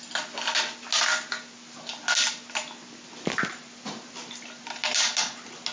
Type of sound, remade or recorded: recorded